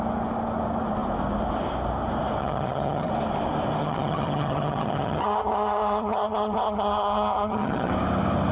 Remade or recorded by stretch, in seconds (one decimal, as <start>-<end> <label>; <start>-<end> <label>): 0.0-2.4 recorded; 2.4-3.1 remade; 3.1-3.8 recorded; 3.8-7.9 remade; 7.9-8.5 recorded